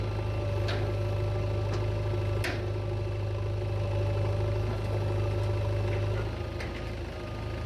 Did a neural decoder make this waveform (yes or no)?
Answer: no